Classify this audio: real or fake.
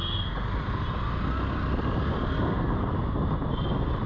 real